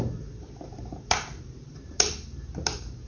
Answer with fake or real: fake